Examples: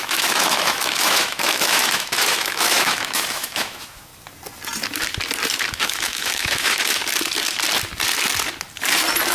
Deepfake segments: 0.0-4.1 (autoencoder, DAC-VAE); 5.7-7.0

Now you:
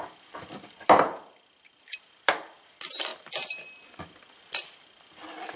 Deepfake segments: none